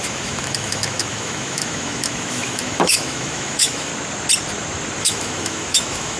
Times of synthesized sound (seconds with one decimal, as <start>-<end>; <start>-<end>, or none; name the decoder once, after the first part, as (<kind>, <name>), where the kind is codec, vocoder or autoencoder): 0.0-3.9 (autoencoder, DAC-VAE); 5.0-6.2